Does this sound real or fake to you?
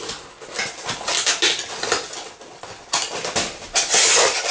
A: real